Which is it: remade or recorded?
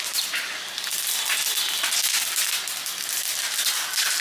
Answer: recorded